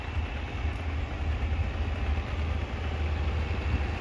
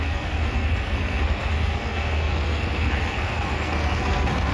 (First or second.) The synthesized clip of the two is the second